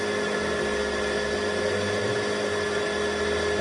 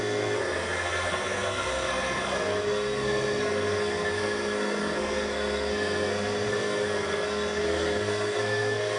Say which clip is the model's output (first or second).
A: second